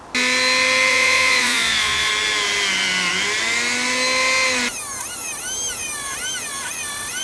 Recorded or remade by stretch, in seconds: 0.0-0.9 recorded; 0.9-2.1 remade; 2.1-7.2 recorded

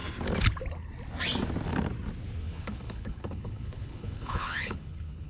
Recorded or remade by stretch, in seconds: 0.0-2.4 recorded; 2.4-5.3 remade

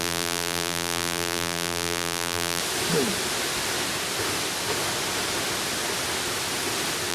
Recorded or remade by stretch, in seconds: 0.0-2.6 remade; 2.6-7.1 recorded